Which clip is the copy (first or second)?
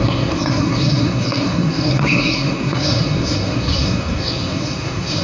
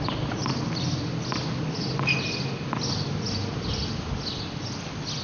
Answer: first